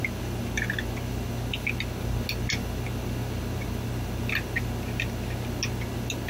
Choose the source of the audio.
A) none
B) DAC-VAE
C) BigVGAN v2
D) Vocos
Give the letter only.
A